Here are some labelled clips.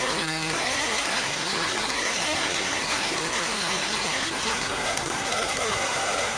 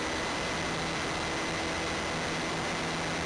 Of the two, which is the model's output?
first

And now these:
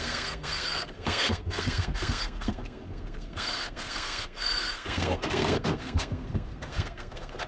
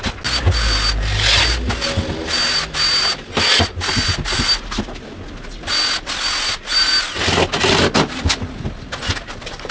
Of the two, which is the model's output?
first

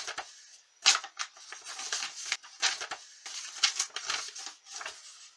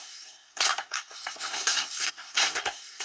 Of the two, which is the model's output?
second